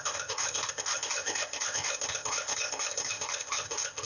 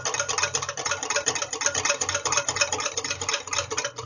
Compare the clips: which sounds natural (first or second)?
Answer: second